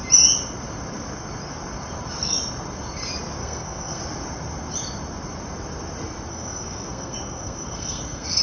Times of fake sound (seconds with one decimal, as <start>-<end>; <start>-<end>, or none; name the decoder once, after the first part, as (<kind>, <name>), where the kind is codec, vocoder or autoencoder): 3.4-4.0 (codec, SNAC); 6.3-8.4